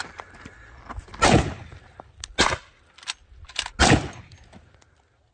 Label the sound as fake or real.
real